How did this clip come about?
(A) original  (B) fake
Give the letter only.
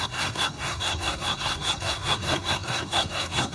B